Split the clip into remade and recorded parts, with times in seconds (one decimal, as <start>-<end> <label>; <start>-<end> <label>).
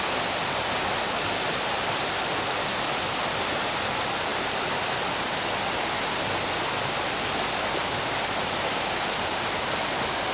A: 0.0-10.3 recorded